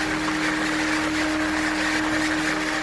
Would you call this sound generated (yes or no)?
no